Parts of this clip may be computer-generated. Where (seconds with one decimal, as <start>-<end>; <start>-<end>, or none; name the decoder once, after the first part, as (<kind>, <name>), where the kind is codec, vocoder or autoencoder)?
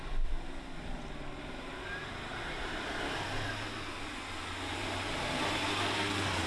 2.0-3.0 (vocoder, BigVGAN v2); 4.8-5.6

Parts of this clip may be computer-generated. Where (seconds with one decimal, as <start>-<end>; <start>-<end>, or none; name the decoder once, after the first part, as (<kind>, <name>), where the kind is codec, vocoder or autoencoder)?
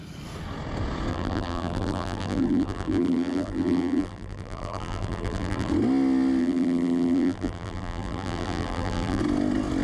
1.1-5.7 (vocoder, BigVGAN v2); 6.4-9.2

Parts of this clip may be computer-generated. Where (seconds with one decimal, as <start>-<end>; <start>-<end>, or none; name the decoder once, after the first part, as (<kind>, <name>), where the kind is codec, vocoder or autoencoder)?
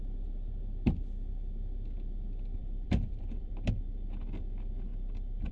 2.6-3.5 (vocoder, BigVGAN v2); 4.9-5.5